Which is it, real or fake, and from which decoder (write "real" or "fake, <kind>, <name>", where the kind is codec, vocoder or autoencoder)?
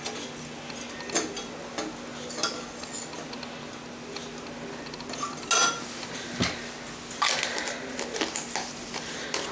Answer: real